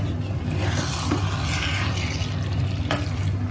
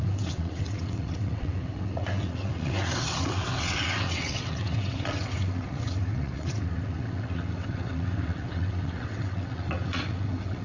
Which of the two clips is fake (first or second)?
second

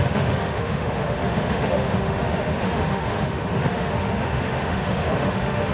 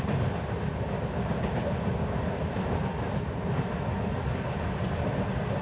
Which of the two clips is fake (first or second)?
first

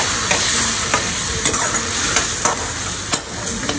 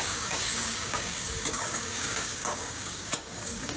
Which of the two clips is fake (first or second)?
second